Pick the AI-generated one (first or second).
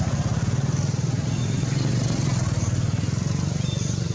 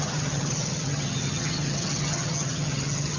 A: second